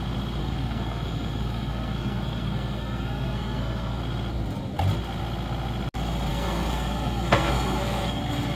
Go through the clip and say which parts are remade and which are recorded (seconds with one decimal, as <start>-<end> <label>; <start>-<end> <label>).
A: 0.0-0.4 recorded; 0.4-4.0 remade; 4.0-6.3 recorded; 6.3-8.2 remade; 8.2-8.6 recorded

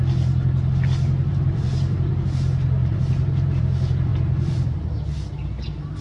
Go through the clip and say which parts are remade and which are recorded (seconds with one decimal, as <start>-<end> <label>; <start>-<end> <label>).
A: 0.0-1.3 recorded; 1.3-2.1 remade; 2.1-2.8 recorded; 2.8-3.6 remade; 3.6-4.1 recorded; 4.1-4.8 remade; 4.8-6.0 recorded

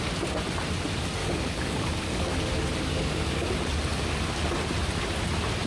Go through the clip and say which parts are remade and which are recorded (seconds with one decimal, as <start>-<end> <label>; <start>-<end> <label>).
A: 0.0-1.2 recorded; 1.2-2.3 remade; 2.3-2.9 recorded; 2.9-3.5 remade; 3.5-5.7 recorded

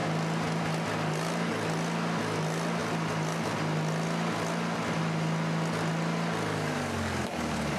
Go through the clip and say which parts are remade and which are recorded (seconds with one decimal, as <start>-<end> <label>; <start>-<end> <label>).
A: 0.0-6.5 recorded; 6.5-7.8 remade

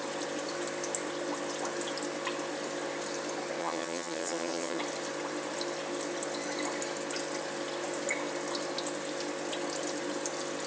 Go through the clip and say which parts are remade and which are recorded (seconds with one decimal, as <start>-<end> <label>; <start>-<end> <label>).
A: 0.0-3.6 recorded; 3.6-4.8 remade; 4.8-10.7 recorded

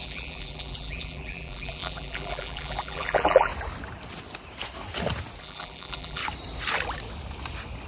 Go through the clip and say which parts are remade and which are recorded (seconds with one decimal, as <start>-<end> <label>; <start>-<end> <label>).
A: 0.0-3.5 remade; 3.5-5.4 recorded; 5.4-6.2 remade; 6.2-7.9 recorded